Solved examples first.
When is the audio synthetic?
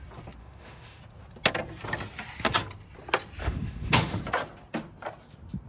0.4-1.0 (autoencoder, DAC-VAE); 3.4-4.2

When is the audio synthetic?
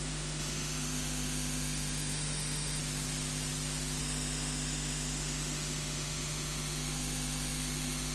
0.0-2.8 (autoencoder, DAC-VAE); 4.0-8.1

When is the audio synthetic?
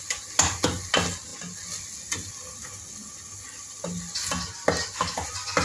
none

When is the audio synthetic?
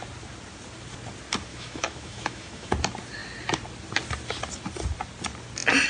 1.5-2.7 (autoencoder, DAC-VAE)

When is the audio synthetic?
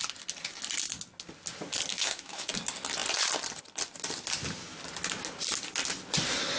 1.9-2.5 (autoencoder, DAC-VAE)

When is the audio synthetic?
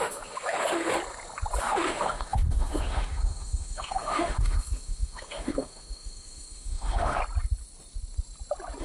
0.0-1.0 (autoencoder, DAC-VAE); 1.6-7.2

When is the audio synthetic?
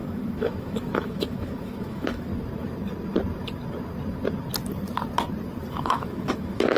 0.0-2.3 (autoencoder, DAC-VAE); 5.7-6.8